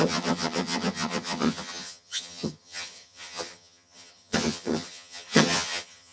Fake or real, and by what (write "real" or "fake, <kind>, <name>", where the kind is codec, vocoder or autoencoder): fake, vocoder, HiFi-GAN